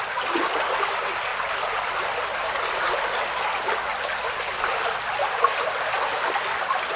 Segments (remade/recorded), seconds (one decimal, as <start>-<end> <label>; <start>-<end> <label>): 0.0-7.0 recorded